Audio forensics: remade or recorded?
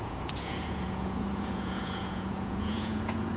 remade